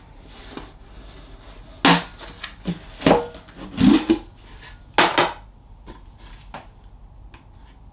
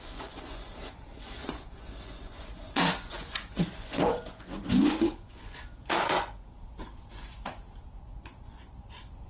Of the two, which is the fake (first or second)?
second